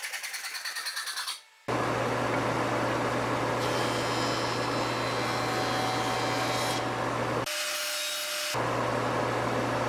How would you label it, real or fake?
real